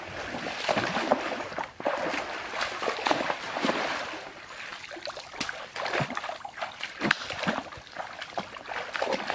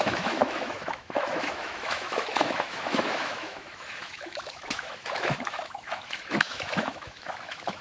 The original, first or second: first